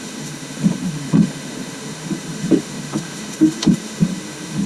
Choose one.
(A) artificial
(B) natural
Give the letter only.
A